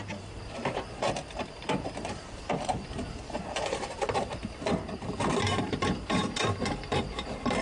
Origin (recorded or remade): remade